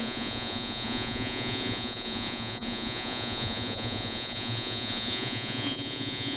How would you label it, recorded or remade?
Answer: remade